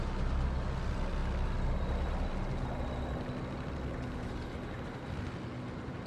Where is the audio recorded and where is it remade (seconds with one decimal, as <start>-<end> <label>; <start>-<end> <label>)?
0.0-6.1 recorded